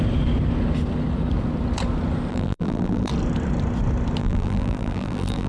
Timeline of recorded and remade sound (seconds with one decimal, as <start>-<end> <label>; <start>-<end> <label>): 0.0-2.3 recorded; 2.3-3.1 remade; 3.1-4.2 recorded; 4.2-5.5 remade